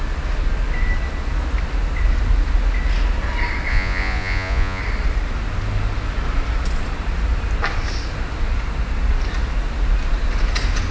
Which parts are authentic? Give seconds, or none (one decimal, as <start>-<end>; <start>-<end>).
0.0-3.7; 4.8-10.9